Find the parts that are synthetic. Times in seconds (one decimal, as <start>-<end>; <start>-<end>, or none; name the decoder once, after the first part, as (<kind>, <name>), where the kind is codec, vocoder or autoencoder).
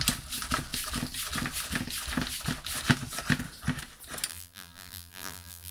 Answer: 4.3-5.7 (vocoder, BigVGAN v2)